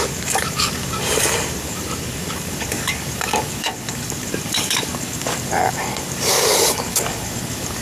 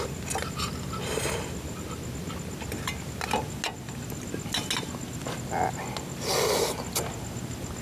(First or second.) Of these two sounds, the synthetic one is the first